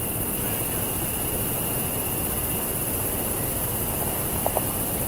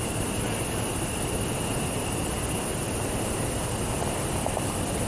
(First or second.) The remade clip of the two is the first